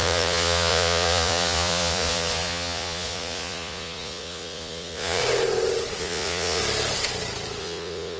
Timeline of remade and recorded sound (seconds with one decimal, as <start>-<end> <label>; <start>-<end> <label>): 0.0-5.2 remade; 5.2-6.0 recorded; 6.0-6.6 remade; 6.6-7.6 recorded; 7.6-8.2 remade

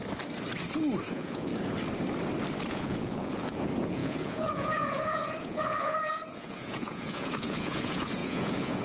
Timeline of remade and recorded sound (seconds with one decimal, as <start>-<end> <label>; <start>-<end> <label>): 0.0-1.1 recorded; 1.1-1.5 remade; 1.5-2.7 recorded; 2.7-8.8 remade

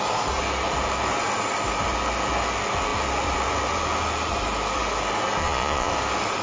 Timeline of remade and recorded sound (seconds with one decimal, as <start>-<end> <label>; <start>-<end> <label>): 0.0-5.4 recorded; 5.4-5.9 remade; 5.9-6.4 recorded

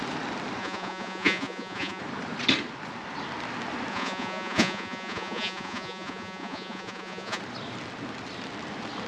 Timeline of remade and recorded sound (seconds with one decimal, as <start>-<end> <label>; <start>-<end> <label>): 0.0-0.6 recorded; 0.6-2.0 remade; 2.0-3.9 recorded; 3.9-7.4 remade; 7.4-9.1 recorded

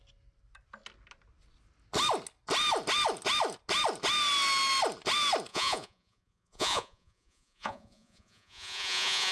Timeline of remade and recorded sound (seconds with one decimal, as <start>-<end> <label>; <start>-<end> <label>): 0.0-5.5 recorded; 5.5-9.3 remade

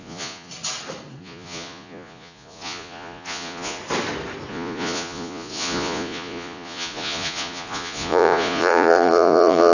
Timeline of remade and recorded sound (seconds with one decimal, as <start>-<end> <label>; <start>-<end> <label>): 0.0-0.5 remade; 0.5-1.2 recorded; 1.2-3.8 remade; 3.8-4.5 recorded; 4.5-9.7 remade